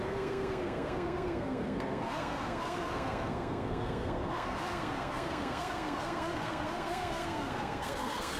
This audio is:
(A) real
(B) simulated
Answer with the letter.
B